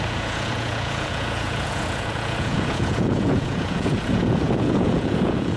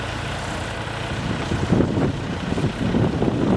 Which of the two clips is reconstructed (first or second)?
first